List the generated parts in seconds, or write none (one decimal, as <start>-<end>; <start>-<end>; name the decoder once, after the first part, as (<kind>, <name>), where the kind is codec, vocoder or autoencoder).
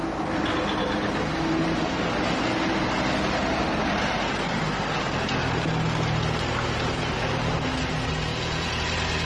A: 8.3-8.8 (vocoder, Vocos)